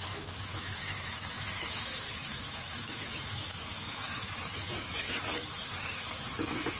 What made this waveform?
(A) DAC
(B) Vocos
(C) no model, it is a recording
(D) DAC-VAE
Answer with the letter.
D